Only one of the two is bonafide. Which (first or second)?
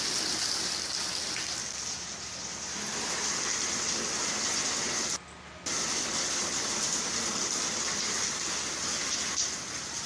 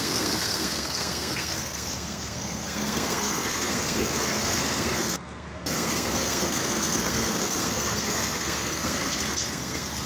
first